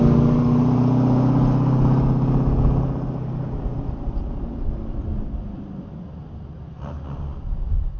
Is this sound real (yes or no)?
yes